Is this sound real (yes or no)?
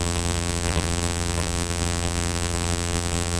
no